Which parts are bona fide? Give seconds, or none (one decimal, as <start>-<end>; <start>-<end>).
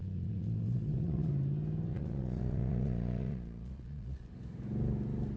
1.3-1.9; 4.3-5.4